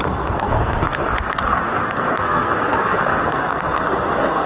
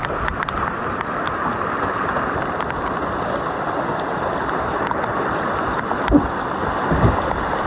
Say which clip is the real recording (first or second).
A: second